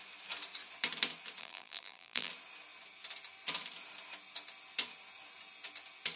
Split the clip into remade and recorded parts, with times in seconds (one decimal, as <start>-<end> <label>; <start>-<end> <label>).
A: 0.0-1.4 recorded; 1.4-2.3 remade; 2.3-6.2 recorded